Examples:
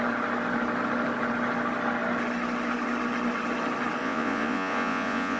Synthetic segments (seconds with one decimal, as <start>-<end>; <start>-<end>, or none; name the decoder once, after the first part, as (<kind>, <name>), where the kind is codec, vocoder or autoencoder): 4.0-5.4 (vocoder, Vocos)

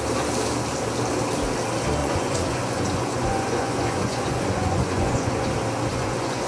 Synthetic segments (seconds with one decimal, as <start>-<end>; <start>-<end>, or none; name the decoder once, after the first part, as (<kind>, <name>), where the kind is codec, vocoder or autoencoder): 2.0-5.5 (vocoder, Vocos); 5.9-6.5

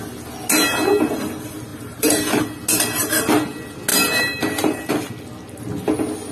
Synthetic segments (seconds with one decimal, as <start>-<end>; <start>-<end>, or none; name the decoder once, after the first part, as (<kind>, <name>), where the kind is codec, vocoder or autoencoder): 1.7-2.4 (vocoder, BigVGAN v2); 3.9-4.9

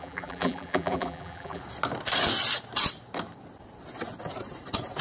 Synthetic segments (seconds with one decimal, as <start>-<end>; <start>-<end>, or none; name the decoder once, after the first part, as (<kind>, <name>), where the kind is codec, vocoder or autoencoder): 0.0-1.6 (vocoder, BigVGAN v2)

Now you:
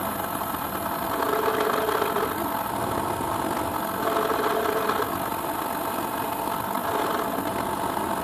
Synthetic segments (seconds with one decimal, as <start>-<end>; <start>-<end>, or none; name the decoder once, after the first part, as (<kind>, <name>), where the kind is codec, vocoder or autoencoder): none